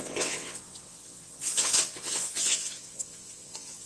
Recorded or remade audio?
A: remade